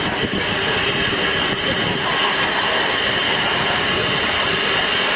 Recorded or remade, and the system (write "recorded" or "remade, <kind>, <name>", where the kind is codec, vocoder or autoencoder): recorded